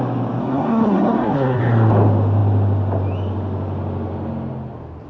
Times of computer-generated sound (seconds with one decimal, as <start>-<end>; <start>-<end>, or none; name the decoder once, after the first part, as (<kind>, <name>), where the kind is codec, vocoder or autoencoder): 0.4-1.6 (codec, SNAC)